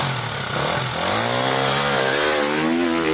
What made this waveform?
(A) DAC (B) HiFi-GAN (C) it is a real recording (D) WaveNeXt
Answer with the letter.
C